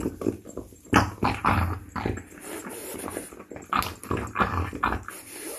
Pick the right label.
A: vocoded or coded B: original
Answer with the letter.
B